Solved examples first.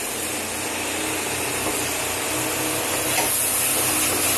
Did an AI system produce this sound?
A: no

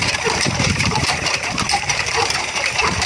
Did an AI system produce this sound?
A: yes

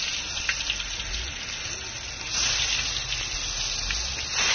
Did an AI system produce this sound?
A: no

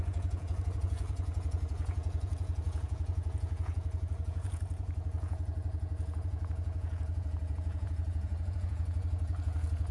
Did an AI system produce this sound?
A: yes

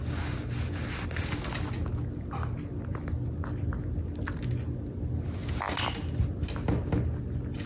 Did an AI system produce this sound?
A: no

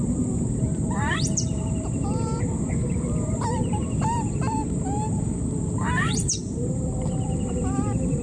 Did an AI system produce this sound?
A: yes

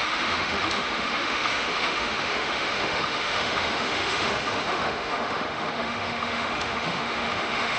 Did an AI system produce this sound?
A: yes